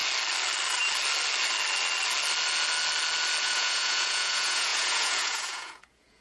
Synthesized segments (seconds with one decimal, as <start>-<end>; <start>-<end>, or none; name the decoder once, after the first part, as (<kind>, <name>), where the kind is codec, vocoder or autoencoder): 3.4-6.2 (vocoder, Vocos)